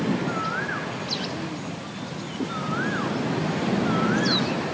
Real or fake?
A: real